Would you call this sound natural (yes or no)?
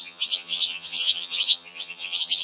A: no